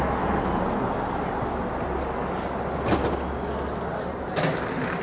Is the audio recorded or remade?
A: recorded